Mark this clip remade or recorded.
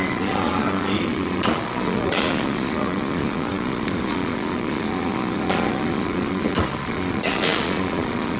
remade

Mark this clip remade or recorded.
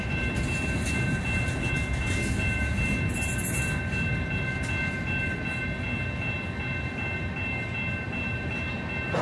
recorded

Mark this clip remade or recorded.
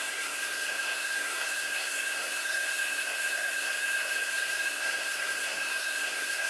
remade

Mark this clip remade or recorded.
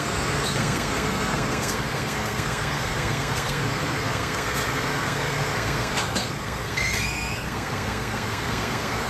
remade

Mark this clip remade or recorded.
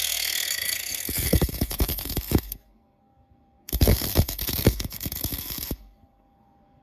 remade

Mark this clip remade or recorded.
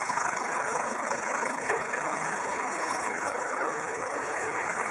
remade